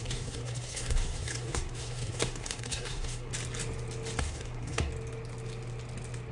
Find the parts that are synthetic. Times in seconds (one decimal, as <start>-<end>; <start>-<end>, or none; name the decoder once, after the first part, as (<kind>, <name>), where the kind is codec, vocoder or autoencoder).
0.0-3.3 (codec, SNAC); 4.2-4.9